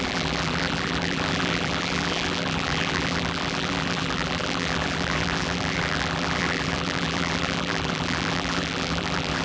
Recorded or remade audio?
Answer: remade